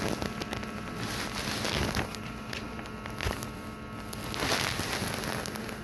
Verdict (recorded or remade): recorded